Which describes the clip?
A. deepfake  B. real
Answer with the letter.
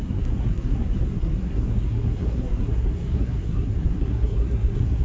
A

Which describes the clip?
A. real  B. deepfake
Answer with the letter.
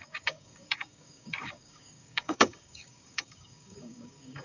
B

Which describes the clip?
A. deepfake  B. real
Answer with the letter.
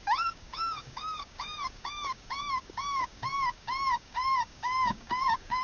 A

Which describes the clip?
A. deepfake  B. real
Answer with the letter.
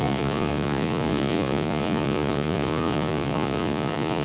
A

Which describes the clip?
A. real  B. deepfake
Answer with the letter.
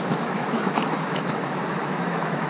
B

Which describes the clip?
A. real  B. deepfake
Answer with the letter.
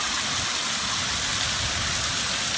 A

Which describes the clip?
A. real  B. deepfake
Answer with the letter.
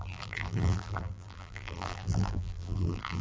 B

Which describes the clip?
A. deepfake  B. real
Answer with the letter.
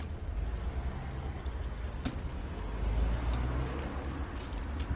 B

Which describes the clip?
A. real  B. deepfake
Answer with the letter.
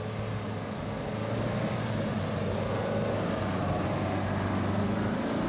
A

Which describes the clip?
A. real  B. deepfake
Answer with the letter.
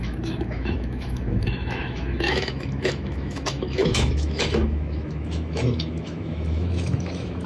B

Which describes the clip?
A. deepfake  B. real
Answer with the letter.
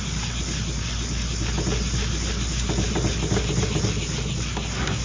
B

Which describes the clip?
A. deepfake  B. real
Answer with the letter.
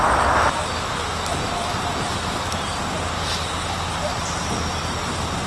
B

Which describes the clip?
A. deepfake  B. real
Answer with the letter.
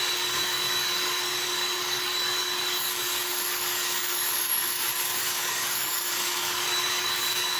A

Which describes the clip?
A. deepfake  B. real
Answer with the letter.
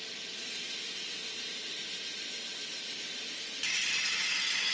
B